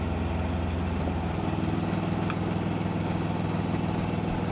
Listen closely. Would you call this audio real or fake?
real